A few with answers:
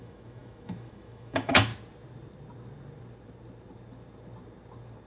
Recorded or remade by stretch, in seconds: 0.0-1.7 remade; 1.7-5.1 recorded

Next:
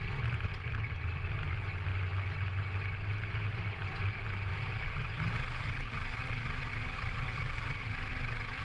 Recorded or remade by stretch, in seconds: 0.0-8.6 recorded

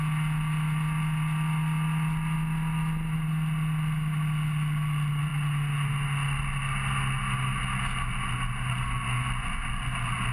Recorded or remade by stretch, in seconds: 0.0-10.3 recorded